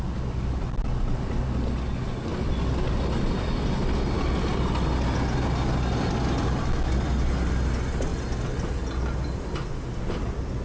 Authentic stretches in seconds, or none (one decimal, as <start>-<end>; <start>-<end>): 0.0-10.6